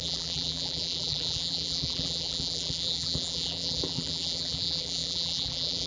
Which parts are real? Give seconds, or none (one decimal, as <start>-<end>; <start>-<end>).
none